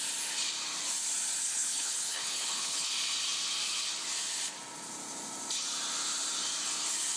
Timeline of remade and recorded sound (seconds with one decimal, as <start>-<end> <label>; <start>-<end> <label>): 0.0-1.4 recorded; 1.4-2.9 remade; 2.9-7.2 recorded